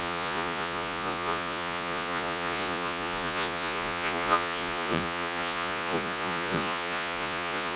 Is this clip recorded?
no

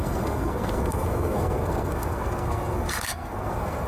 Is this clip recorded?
no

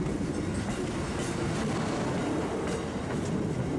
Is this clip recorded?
yes